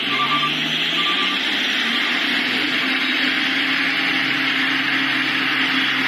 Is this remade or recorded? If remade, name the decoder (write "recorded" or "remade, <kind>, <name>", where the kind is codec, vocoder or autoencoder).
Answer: recorded